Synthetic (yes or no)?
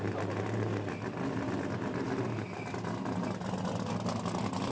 no